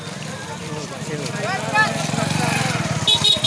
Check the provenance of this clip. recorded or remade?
recorded